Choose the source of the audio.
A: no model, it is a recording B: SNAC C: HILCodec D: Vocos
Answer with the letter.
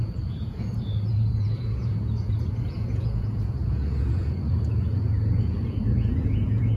D